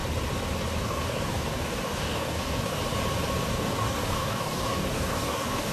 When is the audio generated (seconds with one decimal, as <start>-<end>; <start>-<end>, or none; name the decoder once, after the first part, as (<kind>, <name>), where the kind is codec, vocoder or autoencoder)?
0.8-2.8 (codec, DAC); 3.5-5.7